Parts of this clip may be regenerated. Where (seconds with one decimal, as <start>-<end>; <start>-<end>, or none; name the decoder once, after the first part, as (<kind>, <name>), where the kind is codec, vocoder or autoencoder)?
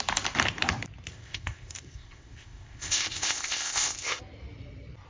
1.1-4.2 (codec, ZipCodec)